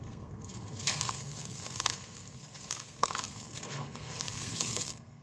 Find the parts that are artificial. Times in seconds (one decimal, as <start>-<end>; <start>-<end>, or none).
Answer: 0.0-5.2